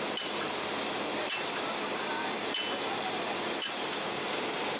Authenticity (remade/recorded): recorded